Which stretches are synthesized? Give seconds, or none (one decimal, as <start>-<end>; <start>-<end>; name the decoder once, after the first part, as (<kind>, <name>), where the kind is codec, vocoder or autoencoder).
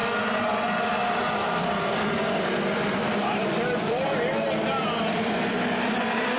1.1-6.4 (vocoder, BigVGAN v2)